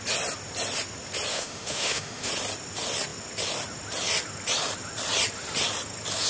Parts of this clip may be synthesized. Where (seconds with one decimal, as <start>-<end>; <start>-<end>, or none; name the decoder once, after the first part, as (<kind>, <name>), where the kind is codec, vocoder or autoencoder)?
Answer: 1.3-2.3 (autoencoder, DAC-VAE)